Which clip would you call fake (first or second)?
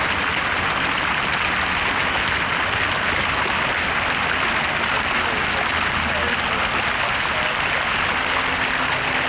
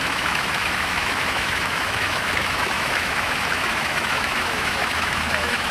second